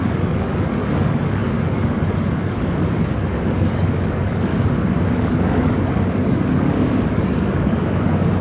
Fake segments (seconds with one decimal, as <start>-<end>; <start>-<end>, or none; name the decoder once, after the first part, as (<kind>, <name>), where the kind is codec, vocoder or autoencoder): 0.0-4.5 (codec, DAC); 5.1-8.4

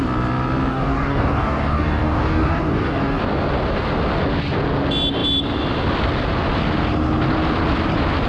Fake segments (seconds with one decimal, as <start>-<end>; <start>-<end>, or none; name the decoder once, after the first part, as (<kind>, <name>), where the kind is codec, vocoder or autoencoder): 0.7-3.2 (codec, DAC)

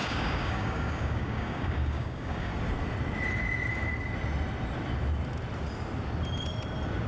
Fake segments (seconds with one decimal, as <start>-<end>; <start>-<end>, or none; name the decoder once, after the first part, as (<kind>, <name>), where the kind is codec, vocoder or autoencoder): 0.0-2.5 (codec, DAC)

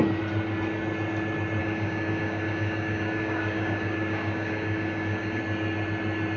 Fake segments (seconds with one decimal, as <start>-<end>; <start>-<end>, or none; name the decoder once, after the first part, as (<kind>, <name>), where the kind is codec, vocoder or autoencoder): 1.6-5.4 (codec, DAC)

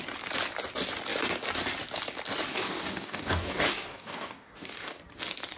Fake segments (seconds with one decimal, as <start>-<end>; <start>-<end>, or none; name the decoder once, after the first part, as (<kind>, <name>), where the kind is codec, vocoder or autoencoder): 2.5-5.0 (codec, DAC)

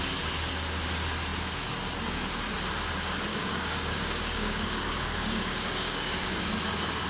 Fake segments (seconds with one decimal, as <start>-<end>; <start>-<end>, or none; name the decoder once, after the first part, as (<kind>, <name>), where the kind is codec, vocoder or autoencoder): 3.3-6.5 (codec, DAC)